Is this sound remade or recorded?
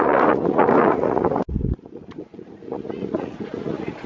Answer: remade